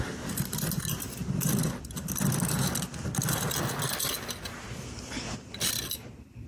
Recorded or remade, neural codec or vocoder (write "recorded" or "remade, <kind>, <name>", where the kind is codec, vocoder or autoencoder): recorded